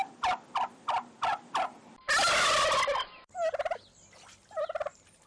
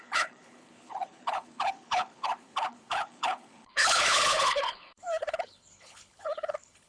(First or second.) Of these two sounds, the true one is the first